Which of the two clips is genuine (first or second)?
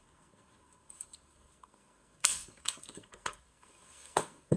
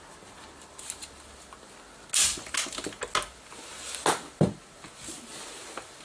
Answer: second